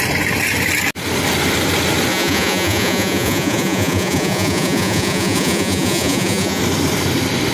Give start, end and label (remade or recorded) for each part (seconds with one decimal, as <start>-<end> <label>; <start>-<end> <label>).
0.0-2.1 recorded; 2.1-6.6 remade; 6.6-7.5 recorded